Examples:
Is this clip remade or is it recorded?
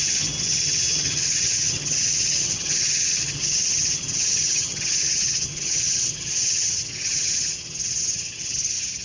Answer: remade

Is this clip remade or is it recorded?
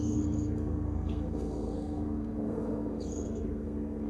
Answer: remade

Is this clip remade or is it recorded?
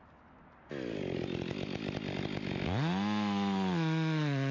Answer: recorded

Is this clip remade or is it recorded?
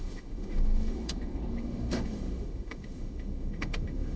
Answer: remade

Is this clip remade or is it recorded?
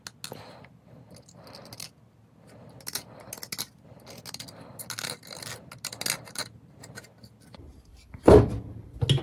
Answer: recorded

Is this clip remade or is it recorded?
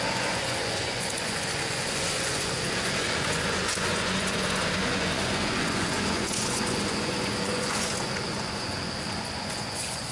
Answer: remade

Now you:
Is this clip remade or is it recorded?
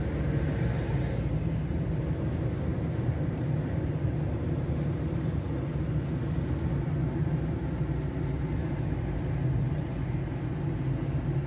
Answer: recorded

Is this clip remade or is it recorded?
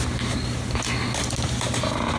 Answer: recorded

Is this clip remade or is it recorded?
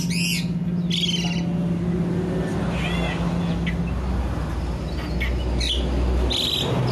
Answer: recorded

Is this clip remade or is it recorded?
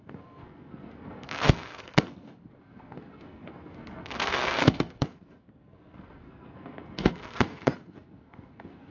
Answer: remade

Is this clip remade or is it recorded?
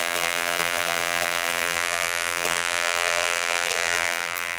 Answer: remade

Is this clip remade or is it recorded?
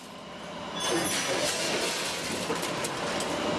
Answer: recorded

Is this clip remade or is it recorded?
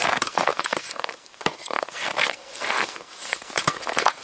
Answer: remade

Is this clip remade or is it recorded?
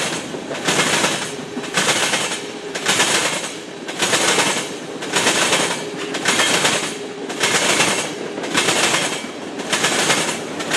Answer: recorded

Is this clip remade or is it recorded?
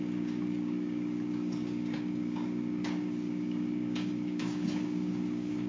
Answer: remade